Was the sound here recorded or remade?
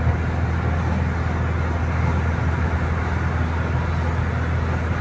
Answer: recorded